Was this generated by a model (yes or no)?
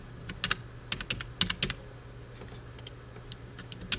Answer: no